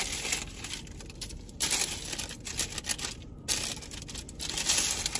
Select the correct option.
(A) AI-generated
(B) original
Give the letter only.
B